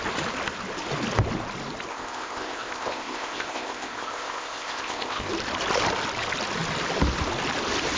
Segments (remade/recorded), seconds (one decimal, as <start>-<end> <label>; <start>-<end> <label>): 0.0-1.9 recorded; 1.9-5.3 remade; 5.3-8.0 recorded